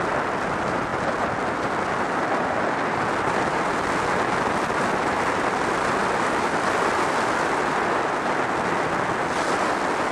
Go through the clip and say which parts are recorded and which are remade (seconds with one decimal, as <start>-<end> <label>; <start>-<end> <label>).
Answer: 0.0-10.1 recorded